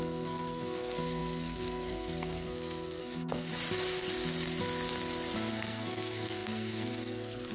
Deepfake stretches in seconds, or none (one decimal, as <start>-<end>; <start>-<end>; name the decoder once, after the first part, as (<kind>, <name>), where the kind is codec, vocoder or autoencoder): 0.0-3.5 (codec, SNAC); 5.5-7.5